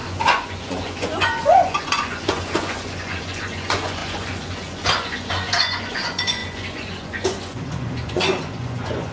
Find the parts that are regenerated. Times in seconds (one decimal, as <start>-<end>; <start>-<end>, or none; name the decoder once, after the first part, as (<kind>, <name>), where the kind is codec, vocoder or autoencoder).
0.0-9.1 (vocoder, Vocos)

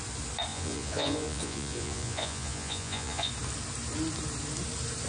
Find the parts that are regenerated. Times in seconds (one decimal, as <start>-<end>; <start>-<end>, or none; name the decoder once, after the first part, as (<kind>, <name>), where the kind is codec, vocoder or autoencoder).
0.5-3.3 (vocoder, Vocos)

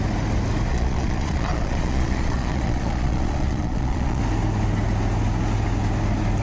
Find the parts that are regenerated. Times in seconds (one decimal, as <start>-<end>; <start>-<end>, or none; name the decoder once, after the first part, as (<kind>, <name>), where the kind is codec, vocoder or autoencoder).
0.7-4.2 (vocoder, Vocos)

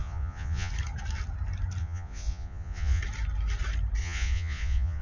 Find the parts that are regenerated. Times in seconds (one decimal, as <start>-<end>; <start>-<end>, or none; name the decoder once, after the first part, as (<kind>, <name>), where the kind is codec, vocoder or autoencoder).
0.0-0.7 (vocoder, Vocos); 1.8-3.0; 4.0-5.0